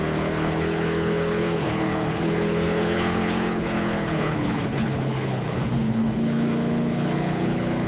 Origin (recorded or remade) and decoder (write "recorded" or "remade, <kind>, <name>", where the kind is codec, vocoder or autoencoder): remade, codec, HILCodec